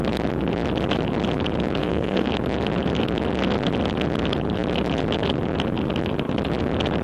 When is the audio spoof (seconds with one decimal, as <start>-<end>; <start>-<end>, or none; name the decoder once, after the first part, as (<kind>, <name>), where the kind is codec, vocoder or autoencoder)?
1.8-2.3 (codec, SNAC)